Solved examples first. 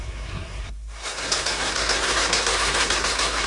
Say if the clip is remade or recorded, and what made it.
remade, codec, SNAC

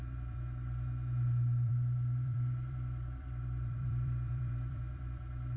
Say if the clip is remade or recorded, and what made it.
remade, vocoder, BigVGAN v2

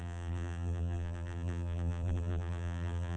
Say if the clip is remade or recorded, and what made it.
remade, vocoder, BigVGAN v2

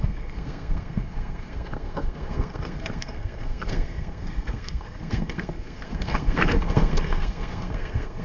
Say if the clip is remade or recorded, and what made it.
remade, codec, SNAC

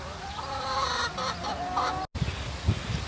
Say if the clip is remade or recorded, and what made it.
recorded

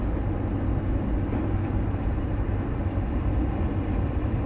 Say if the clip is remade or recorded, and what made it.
recorded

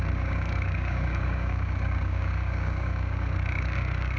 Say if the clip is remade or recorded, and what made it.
remade, codec, DAC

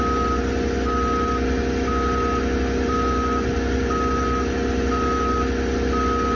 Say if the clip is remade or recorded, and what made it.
recorded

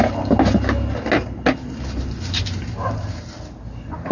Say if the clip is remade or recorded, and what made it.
recorded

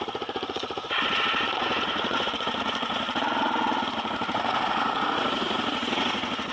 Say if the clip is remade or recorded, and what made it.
remade, vocoder, Vocos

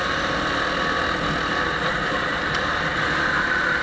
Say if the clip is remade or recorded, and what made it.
recorded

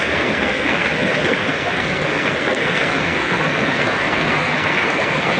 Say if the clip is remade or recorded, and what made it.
remade, codec, SNAC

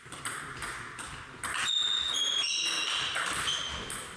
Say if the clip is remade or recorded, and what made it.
recorded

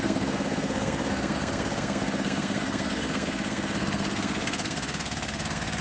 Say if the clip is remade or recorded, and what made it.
remade, codec, SNAC